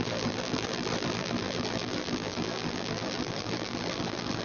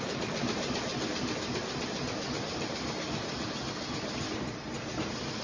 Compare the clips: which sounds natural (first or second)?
second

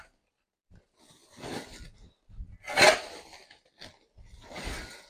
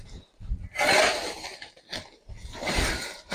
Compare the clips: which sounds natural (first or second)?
first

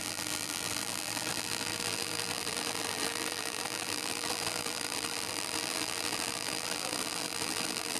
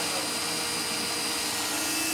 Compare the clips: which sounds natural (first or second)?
second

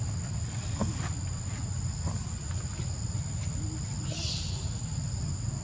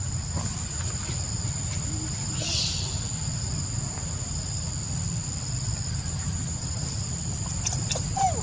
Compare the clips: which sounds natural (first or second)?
first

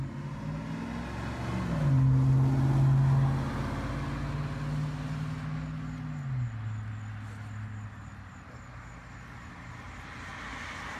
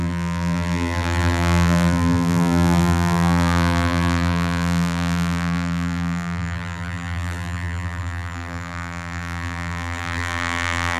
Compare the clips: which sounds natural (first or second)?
first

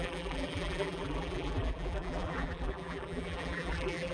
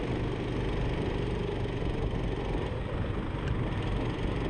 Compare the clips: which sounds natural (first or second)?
second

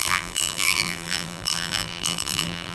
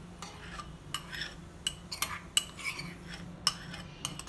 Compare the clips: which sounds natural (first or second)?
second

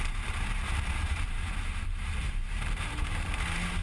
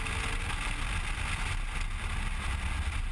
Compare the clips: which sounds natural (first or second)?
second